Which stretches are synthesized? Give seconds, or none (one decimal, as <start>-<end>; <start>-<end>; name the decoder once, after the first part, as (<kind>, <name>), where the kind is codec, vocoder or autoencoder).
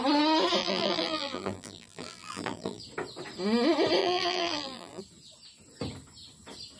0.6-2.8 (vocoder, BigVGAN v2); 4.0-5.0